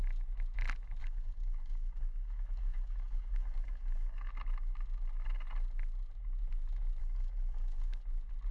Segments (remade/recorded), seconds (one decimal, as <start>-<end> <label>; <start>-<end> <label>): 0.0-1.0 recorded; 1.0-4.3 remade; 4.3-7.0 recorded; 7.0-8.0 remade; 8.0-8.5 recorded

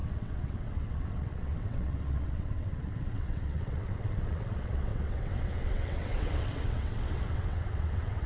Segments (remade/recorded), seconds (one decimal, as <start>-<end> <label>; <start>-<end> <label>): 0.0-8.3 remade